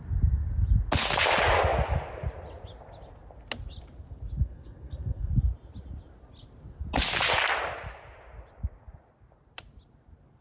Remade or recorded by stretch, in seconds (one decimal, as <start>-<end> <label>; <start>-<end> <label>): 0.0-4.4 recorded; 4.4-5.3 remade; 5.3-10.4 recorded